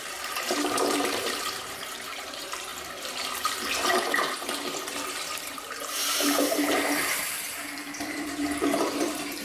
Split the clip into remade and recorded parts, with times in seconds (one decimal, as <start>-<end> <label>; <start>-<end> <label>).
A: 0.0-2.7 remade; 2.7-6.4 recorded; 6.4-9.4 remade